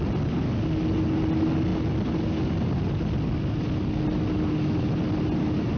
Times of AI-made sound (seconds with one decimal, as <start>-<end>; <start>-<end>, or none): none

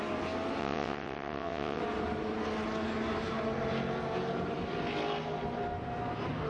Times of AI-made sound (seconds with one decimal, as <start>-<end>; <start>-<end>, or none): 0.6-1.8

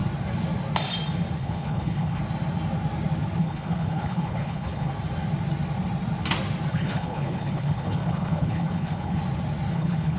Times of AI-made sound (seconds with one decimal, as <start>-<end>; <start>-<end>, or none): 1.4-2.2; 3.4-4.9; 6.7-9.2; 9.7-10.2

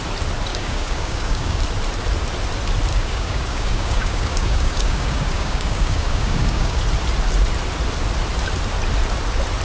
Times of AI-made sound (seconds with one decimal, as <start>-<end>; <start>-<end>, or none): 0.5-1.6; 2.9-6.8

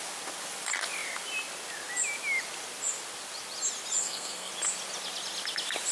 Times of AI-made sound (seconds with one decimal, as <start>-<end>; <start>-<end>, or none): 4.0-4.5

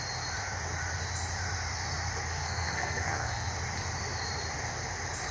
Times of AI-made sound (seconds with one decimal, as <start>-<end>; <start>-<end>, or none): 2.3-3.5